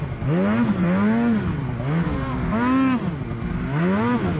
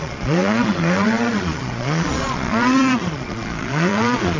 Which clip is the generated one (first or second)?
second